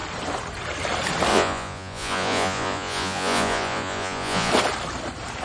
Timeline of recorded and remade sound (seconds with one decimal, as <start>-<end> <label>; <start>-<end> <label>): 0.0-1.3 recorded; 1.3-4.5 remade; 4.5-5.4 recorded